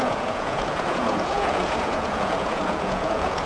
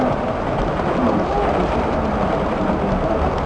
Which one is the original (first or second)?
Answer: second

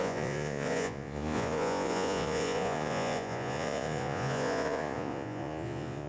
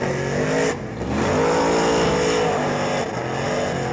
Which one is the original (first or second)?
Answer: second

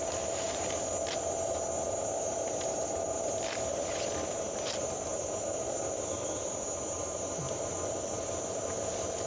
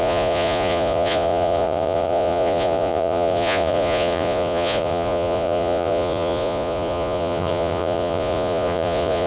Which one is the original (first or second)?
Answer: first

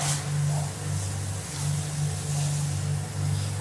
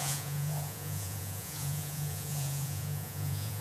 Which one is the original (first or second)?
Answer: first